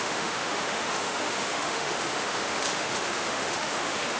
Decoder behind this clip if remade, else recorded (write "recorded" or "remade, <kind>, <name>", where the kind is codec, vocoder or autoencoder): remade, autoencoder, DAC-VAE